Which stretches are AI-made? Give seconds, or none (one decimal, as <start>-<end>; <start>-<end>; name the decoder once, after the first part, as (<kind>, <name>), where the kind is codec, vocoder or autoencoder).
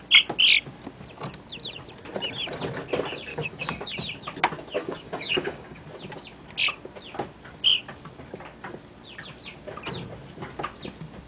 3.3-3.9 (codec, DAC); 4.8-5.8